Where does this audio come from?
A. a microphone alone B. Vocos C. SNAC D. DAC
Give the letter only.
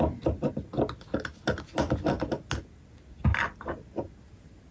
A